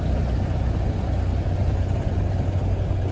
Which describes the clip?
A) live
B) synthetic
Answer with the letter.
A